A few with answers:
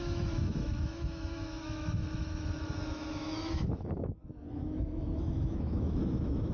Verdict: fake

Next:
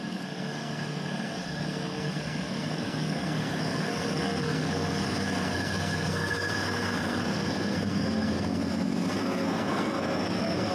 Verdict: fake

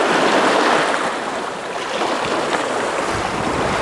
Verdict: real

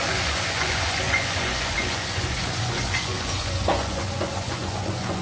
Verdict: fake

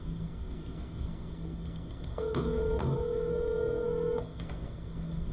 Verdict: fake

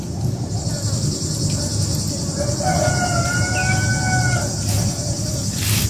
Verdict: real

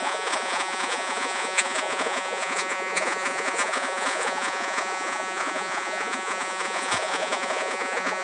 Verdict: fake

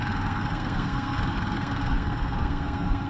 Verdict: fake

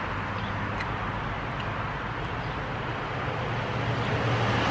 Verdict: real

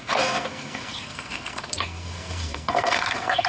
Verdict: fake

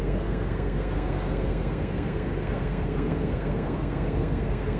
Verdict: fake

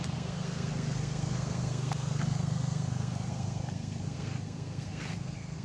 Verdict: fake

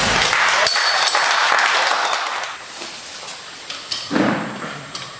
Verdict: real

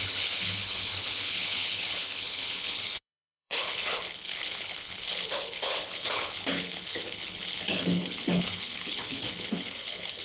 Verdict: fake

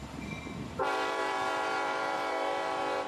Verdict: fake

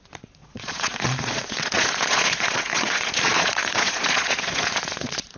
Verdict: fake